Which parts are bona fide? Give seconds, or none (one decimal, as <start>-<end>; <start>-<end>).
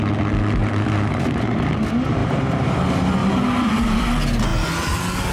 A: 0.0-0.6; 1.7-2.2; 2.8-3.2; 4.0-5.3